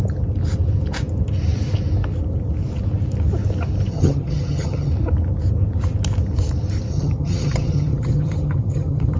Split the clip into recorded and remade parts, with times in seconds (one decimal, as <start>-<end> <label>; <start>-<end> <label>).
0.0-3.9 recorded; 3.9-4.9 remade; 4.9-6.9 recorded; 6.9-9.2 remade